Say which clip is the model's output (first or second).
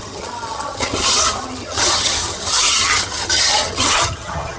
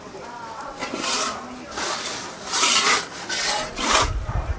first